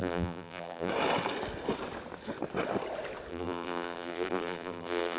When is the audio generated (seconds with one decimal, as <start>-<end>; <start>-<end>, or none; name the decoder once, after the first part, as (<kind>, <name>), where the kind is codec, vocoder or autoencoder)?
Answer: 0.0-0.9 (vocoder, BigVGAN v2); 3.3-5.2